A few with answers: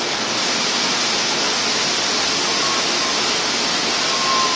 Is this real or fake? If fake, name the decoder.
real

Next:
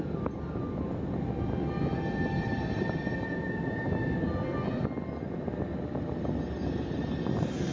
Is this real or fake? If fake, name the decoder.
real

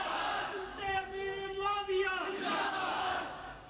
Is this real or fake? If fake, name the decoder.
fake, codec, DAC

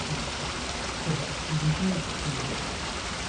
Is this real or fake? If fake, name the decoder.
real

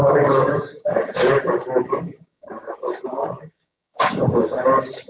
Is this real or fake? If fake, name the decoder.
fake, codec, DAC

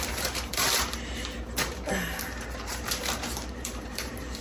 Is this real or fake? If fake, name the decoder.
fake, vocoder, BigVGAN v2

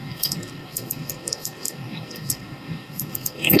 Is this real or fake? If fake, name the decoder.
fake, codec, SNAC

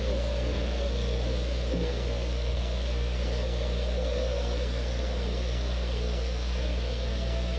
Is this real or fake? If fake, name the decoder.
fake, codec, SNAC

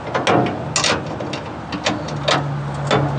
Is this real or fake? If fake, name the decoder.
real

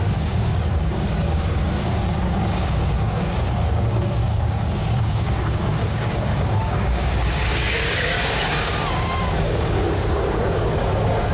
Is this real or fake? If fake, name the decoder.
fake, codec, DAC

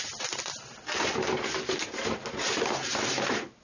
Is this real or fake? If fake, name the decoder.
real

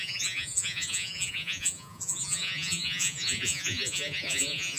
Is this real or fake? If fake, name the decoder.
fake, vocoder, Vocos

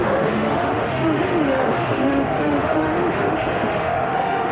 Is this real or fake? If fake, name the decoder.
fake, autoencoder, DAC-VAE